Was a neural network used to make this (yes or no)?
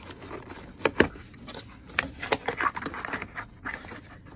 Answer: no